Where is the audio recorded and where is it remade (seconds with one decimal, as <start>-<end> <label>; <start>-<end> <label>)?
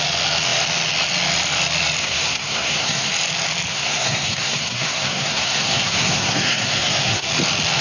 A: 0.0-2.0 recorded; 2.0-3.1 remade; 3.1-3.7 recorded; 3.7-7.3 remade; 7.3-7.8 recorded